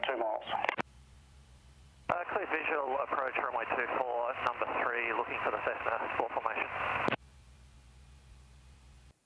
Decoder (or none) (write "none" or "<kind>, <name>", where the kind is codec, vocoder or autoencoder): vocoder, BigVGAN v2